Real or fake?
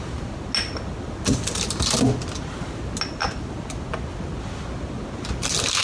real